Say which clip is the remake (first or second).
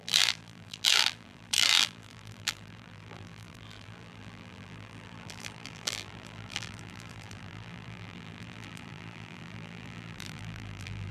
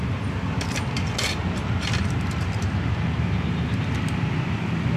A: first